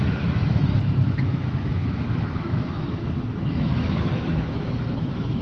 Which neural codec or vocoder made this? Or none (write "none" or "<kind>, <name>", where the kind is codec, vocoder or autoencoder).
autoencoder, DAC-VAE